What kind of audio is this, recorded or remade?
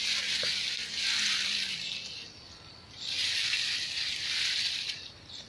recorded